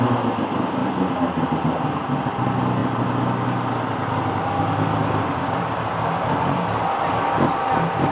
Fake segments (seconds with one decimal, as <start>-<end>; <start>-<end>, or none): none